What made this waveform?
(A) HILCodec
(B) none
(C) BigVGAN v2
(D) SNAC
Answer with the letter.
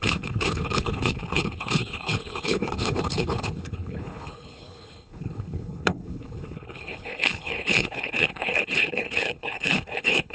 A